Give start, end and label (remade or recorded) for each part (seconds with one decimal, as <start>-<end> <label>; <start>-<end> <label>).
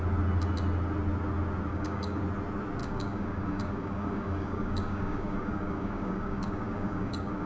0.0-1.7 recorded; 1.7-2.2 remade; 2.2-2.8 recorded; 2.8-7.5 remade